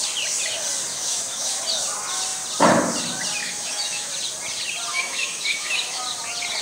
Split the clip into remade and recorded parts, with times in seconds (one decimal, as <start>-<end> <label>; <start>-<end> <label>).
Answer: 0.0-0.9 recorded; 0.9-1.6 remade; 1.6-3.4 recorded; 3.4-4.1 remade; 4.1-4.9 recorded; 4.9-6.0 remade; 6.0-6.6 recorded